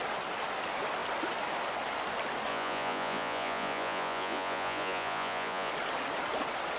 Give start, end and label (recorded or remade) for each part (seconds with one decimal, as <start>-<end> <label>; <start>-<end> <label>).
0.0-2.5 recorded; 2.5-5.7 remade; 5.7-6.8 recorded